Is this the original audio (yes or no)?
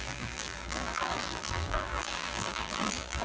no